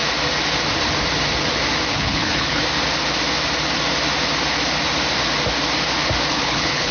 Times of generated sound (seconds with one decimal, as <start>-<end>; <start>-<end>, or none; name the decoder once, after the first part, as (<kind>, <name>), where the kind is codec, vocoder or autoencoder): 1.9-2.6 (codec, HILCodec); 6.3-6.9